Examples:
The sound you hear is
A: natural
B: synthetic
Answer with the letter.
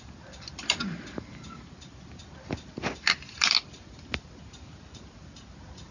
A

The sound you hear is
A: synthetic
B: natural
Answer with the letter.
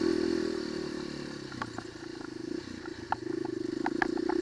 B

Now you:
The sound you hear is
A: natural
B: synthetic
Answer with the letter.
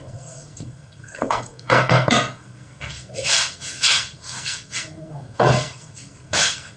B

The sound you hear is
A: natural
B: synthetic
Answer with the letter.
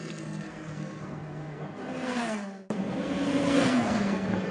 B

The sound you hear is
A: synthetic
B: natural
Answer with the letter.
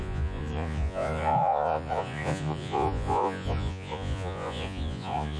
A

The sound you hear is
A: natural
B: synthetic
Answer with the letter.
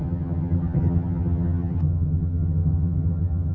B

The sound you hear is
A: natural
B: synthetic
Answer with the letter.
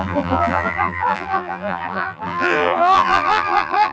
B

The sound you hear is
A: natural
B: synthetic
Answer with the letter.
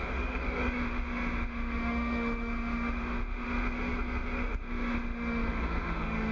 B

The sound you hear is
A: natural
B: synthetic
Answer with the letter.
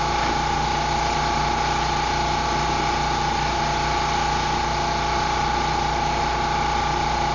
A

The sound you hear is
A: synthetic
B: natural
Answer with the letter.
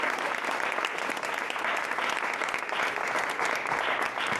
B